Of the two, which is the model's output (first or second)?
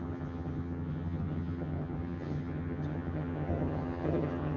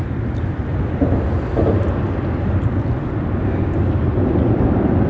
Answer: first